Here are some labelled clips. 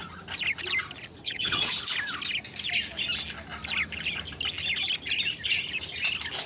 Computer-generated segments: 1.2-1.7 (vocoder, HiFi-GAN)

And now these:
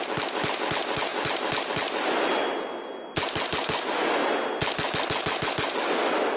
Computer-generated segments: none

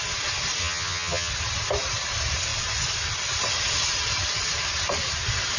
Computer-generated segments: 0.6-1.3 (vocoder, HiFi-GAN)

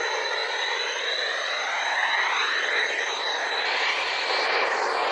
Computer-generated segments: none

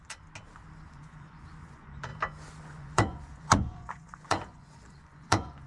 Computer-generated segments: 0.9-2.1 (vocoder, Vocos); 2.6-5.7

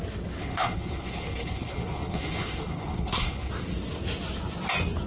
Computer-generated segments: 0.4-3.5 (codec, HILCodec)